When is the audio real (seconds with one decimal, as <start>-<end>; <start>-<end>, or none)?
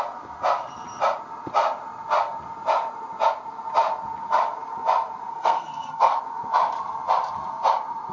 0.0-5.3; 6.2-8.1